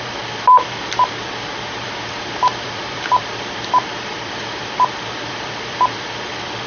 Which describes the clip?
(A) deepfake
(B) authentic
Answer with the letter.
A